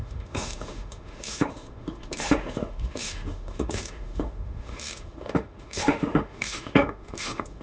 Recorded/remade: remade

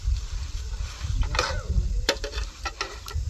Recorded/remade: recorded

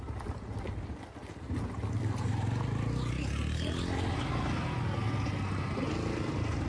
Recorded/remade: recorded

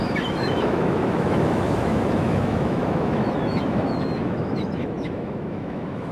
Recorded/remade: remade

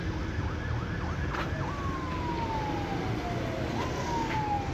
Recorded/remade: recorded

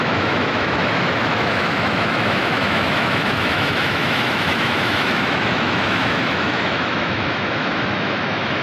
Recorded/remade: remade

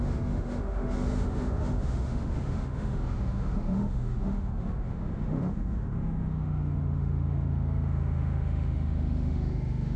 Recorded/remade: remade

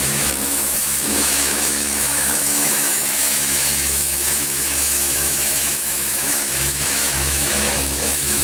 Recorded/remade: remade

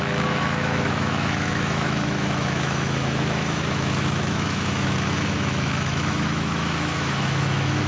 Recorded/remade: remade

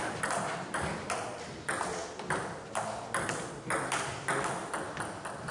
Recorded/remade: recorded